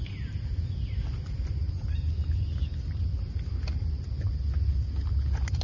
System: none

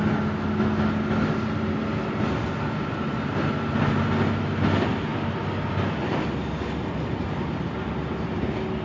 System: none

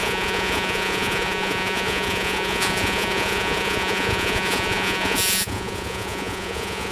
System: vocoder, Vocos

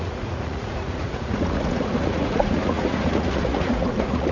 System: vocoder, Vocos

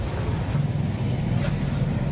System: none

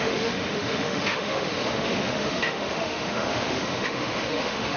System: autoencoder, DAC-VAE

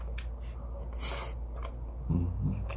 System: none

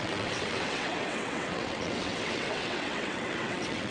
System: vocoder, WaveNeXt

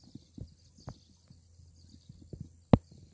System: none